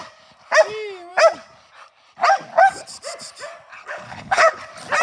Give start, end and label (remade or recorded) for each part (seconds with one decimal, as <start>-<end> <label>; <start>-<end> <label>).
0.0-3.7 recorded; 3.7-4.6 remade; 4.6-5.0 recorded